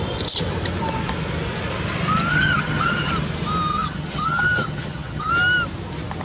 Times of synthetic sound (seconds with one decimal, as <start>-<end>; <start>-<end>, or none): 2.3-3.1; 3.7-5.3